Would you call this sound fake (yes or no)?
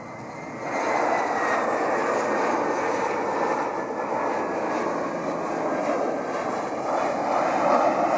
no